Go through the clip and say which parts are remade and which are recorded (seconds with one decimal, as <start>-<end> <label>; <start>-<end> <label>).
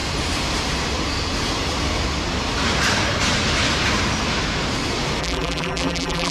0.0-5.2 recorded; 5.2-6.3 remade